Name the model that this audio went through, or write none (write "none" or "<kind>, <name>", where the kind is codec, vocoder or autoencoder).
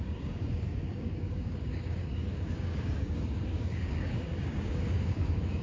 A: codec, DAC